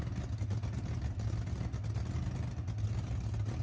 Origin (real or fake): real